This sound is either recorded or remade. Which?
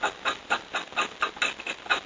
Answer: recorded